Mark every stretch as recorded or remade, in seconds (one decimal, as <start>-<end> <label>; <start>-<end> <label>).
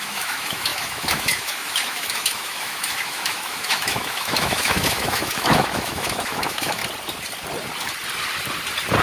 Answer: 0.0-6.8 remade; 6.8-9.0 recorded